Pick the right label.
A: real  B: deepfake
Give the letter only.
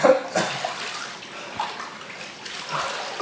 A